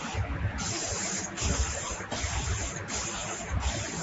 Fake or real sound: real